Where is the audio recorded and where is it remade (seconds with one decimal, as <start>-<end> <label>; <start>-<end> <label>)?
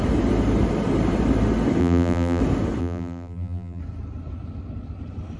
0.0-1.8 recorded; 1.8-2.4 remade; 2.4-2.8 recorded; 2.8-3.8 remade; 3.8-5.4 recorded